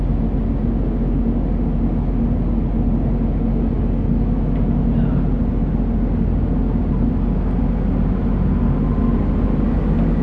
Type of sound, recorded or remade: recorded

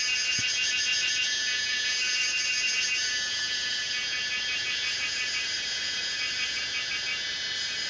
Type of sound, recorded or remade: remade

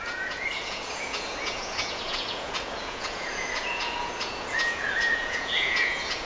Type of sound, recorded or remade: remade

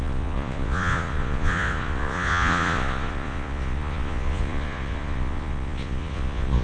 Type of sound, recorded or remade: remade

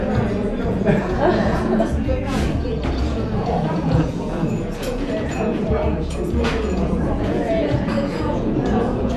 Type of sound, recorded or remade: remade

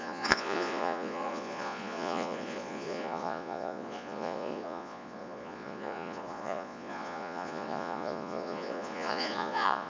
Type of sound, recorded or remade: remade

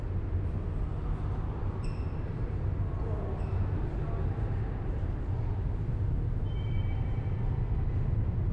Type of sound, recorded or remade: recorded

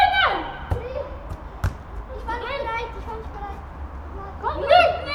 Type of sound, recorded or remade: recorded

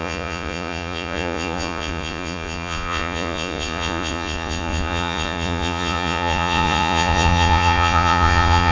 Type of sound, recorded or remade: remade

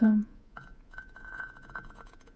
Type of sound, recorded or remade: remade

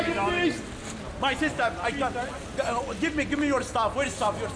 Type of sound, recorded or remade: recorded